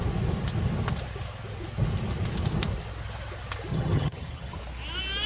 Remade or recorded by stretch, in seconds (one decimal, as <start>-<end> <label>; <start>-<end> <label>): 0.0-3.7 recorded; 3.7-4.6 remade; 4.6-5.3 recorded